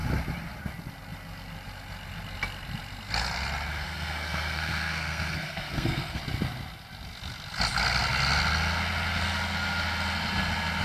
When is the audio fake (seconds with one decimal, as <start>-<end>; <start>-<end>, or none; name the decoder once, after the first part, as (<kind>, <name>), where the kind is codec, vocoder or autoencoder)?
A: 3.7-6.2 (codec, SNAC)